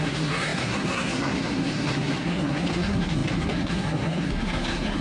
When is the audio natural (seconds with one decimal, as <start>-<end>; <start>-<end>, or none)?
none